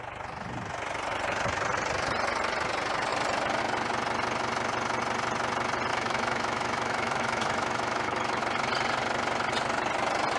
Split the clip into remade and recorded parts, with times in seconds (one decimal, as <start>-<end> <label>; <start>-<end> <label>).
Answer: 0.0-5.9 recorded; 5.9-8.4 remade; 8.4-10.4 recorded